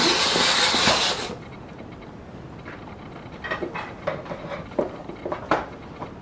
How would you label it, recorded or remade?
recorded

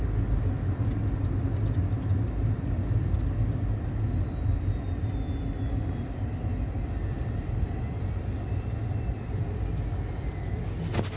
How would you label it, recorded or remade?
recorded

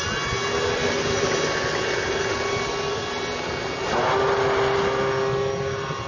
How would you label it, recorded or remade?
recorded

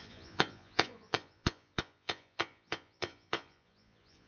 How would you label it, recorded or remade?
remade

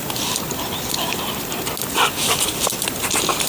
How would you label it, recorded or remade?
recorded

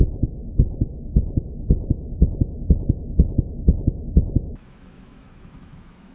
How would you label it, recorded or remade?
remade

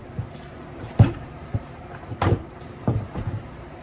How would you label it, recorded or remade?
remade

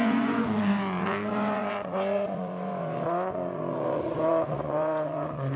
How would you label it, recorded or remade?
remade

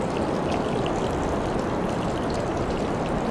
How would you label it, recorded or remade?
recorded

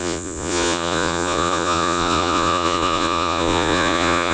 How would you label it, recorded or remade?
remade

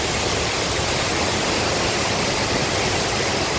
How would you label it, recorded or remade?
recorded